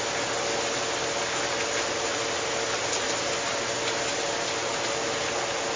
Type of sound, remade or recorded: recorded